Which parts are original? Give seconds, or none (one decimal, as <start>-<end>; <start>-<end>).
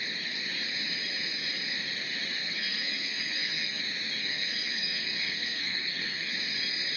0.0-2.4; 3.8-4.2; 6.3-7.0